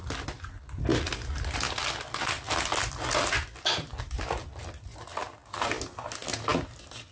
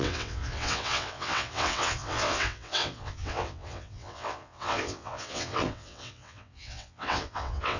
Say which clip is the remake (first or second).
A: second